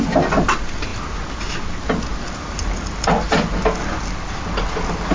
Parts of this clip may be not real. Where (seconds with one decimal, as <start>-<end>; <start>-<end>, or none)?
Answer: none